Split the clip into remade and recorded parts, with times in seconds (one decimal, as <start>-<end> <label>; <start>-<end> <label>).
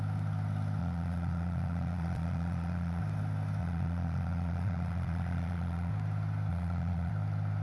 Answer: 0.0-0.8 recorded; 0.8-3.0 remade; 3.0-3.6 recorded; 3.6-5.9 remade; 5.9-6.5 recorded; 6.5-7.1 remade; 7.1-7.6 recorded